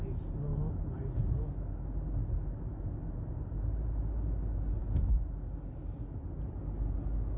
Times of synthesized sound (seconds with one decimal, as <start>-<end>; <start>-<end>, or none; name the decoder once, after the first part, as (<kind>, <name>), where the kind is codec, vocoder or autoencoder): none